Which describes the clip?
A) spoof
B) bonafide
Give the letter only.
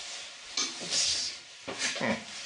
B